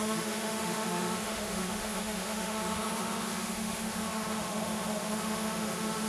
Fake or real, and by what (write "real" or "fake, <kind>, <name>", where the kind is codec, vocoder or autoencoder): fake, autoencoder, DAC-VAE